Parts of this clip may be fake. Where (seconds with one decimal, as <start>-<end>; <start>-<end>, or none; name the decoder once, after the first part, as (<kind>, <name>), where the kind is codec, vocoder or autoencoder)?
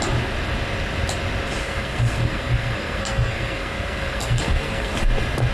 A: 1.6-4.9 (codec, SNAC)